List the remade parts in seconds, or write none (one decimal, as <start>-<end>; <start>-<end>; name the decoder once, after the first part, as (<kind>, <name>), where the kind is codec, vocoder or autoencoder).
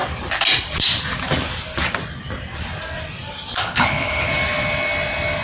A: 3.6-4.3 (codec, HILCodec)